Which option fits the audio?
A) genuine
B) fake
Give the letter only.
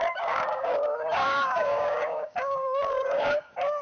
B